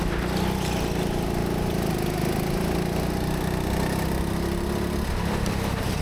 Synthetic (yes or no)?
no